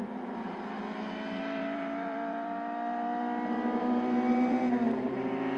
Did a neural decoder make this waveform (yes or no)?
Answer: yes